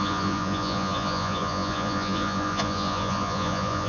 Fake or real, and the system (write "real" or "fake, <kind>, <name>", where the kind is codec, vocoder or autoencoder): fake, vocoder, Vocos